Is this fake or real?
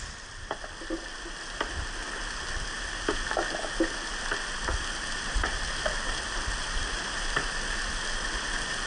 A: real